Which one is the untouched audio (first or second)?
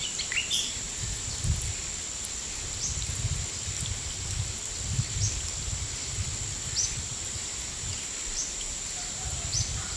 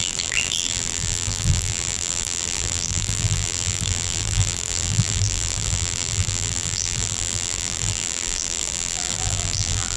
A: first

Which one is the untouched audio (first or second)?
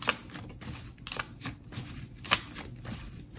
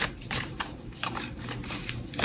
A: first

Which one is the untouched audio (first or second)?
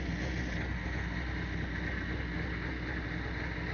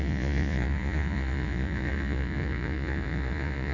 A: first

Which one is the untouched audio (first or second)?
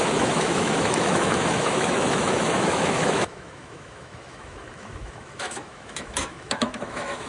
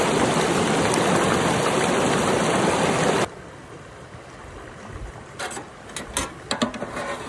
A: second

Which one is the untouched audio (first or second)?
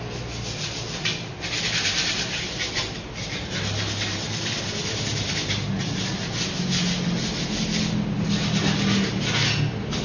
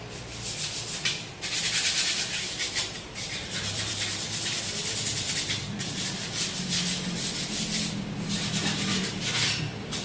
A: first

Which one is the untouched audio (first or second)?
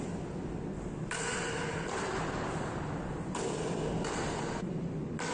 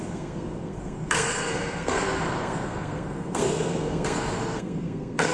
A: first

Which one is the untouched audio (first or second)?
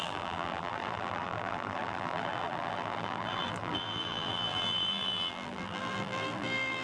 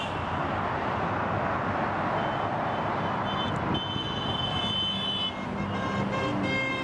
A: second